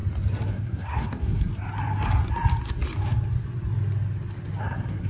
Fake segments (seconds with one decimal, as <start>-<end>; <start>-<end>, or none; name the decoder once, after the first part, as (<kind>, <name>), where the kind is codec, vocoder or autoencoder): 0.5-1.5 (codec, SNAC); 4.6-5.1